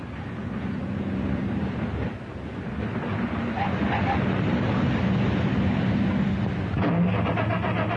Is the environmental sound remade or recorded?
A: recorded